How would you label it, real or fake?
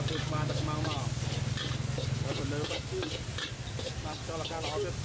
real